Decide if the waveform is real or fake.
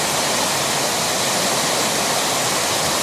real